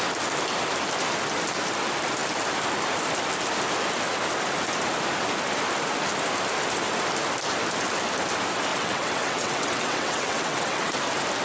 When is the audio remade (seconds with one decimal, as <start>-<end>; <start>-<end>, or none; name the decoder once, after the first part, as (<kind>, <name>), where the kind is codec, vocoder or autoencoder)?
8.7-11.0 (vocoder, WaveNeXt)